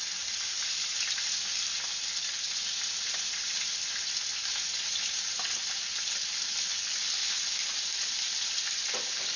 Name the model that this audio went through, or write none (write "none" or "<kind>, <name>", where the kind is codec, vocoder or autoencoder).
none